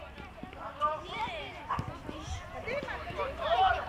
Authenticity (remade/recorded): remade